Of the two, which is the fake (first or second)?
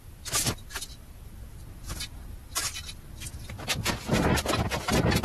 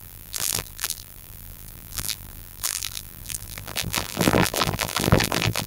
second